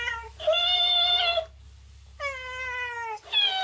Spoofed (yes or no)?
no